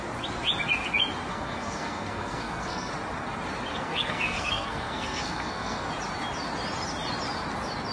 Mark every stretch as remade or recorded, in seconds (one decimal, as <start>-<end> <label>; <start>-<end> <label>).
0.0-1.3 recorded; 1.3-2.9 remade; 2.9-3.7 recorded; 3.7-5.9 remade; 5.9-7.9 recorded